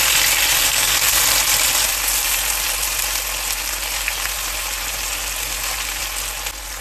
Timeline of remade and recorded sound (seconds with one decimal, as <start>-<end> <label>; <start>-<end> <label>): 0.0-0.6 recorded; 0.6-1.2 remade; 1.2-6.8 recorded